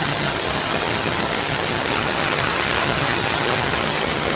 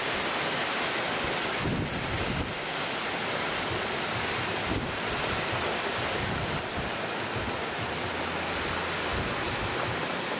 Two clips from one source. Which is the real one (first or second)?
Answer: second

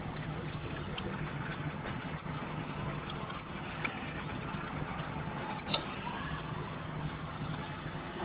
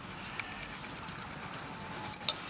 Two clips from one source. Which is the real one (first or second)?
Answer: second